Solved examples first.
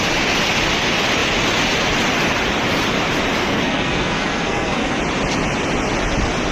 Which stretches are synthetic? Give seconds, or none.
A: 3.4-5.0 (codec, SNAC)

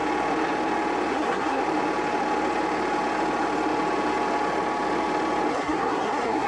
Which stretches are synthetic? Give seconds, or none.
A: 1.1-1.6 (codec, SNAC); 5.5-6.5

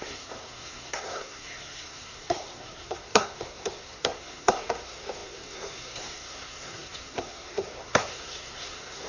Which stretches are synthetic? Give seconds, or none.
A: 0.0-9.1 (codec, SNAC)

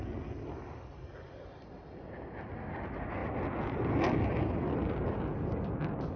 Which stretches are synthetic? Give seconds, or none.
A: none

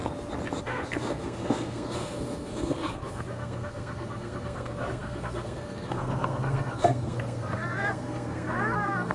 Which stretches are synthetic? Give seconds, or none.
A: 0.6-9.1 (codec, SNAC)

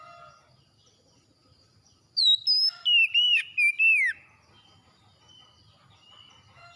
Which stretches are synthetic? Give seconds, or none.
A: none